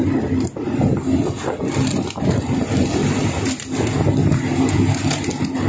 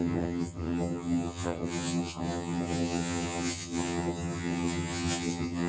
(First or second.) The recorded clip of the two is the first